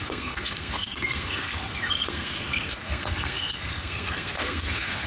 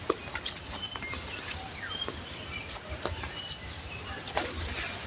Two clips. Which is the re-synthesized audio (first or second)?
first